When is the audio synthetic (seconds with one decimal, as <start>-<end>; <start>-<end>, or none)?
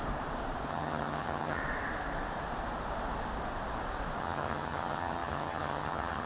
0.7-1.6; 4.2-6.3